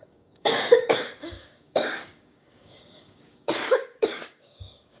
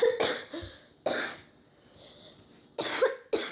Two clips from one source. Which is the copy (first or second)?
first